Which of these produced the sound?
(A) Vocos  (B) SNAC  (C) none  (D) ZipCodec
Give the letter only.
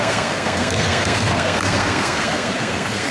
B